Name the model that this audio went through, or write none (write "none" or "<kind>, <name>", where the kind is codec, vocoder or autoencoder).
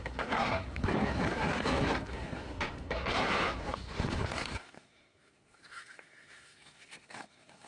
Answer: codec, SNAC